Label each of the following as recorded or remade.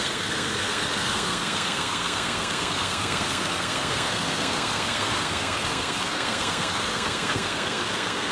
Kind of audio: remade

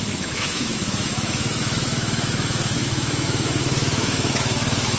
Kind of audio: remade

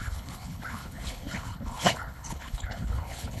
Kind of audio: remade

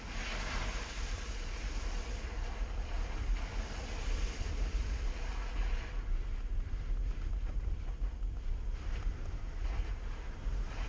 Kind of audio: recorded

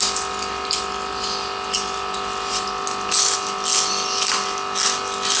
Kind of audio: recorded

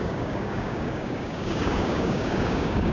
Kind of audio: remade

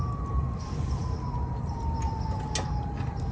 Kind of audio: recorded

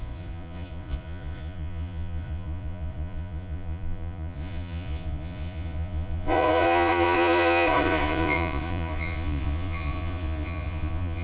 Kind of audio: remade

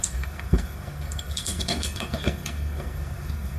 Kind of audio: remade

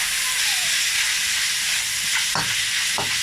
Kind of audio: recorded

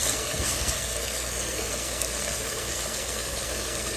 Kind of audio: remade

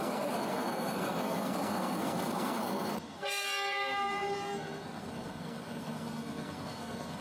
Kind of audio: remade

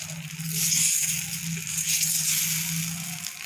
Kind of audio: recorded